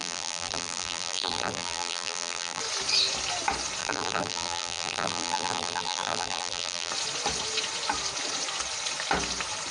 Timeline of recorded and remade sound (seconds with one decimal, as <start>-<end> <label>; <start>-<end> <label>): 0.0-2.6 remade; 2.6-3.8 recorded; 3.8-6.9 remade; 6.9-9.7 recorded